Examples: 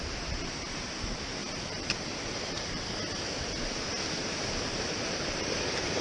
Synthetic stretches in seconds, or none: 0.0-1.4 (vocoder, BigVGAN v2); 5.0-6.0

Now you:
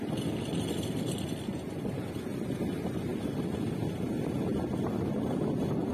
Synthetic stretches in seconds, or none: none